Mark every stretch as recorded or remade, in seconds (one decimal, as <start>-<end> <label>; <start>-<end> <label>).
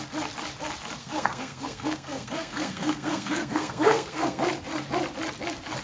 0.0-1.0 recorded; 1.0-4.5 remade; 4.5-5.8 recorded